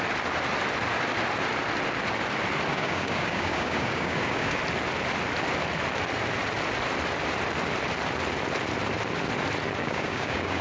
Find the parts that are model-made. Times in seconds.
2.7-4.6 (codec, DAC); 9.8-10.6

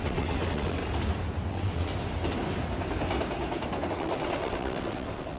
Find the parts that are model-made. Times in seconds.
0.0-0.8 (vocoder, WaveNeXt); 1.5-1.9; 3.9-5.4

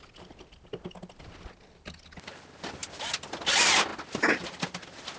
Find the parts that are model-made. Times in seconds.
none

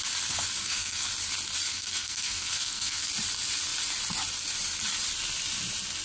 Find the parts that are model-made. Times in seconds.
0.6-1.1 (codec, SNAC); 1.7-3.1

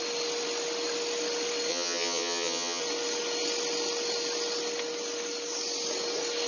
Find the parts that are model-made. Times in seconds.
1.7-2.8 (vocoder, HiFi-GAN)